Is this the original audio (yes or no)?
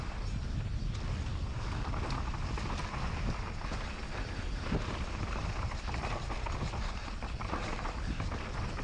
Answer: yes